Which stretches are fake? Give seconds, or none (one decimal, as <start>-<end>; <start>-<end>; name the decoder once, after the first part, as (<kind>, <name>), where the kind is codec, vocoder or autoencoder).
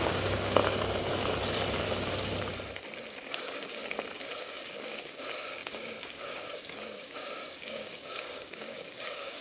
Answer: 0.0-0.6 (codec, DAC); 3.3-3.8; 4.4-9.4